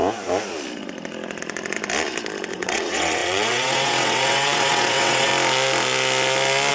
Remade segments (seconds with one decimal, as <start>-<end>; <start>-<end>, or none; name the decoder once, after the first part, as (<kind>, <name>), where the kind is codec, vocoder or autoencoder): 2.5-5.3 (vocoder, WaveNeXt)